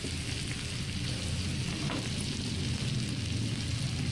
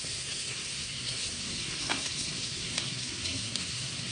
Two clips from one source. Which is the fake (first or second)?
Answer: second